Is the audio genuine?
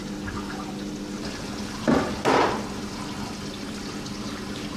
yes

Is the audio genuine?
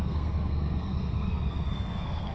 no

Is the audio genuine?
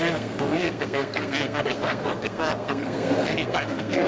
no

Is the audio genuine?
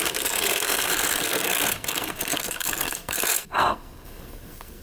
no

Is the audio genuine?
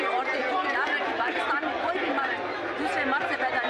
yes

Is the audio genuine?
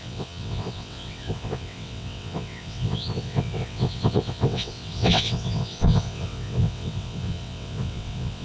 no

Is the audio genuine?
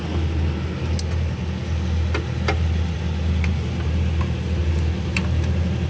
yes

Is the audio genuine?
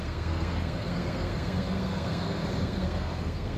no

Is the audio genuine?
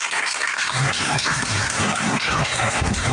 no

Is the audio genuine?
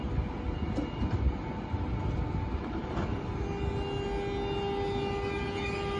yes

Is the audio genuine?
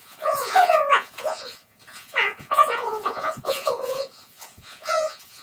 no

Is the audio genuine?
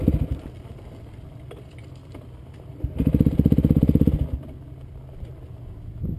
yes